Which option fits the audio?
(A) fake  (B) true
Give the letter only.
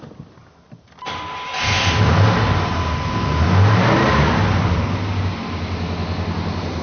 B